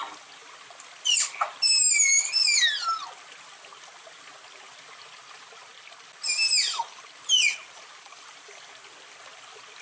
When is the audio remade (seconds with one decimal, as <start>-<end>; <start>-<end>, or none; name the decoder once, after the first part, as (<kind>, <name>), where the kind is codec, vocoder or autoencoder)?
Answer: none